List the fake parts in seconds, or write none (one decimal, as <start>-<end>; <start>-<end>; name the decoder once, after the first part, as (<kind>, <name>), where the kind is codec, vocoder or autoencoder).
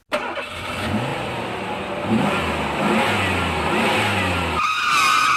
none